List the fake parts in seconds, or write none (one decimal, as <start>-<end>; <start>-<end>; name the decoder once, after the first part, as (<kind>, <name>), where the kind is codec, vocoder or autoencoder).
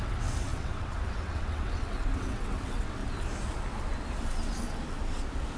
0.0-3.0 (vocoder, WaveNeXt)